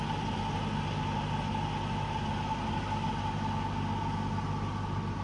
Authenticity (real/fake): real